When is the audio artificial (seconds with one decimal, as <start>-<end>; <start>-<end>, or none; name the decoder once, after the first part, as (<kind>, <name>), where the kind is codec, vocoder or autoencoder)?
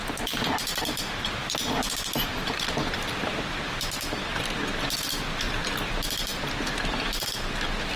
none